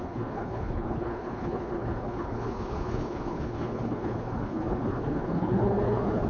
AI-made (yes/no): yes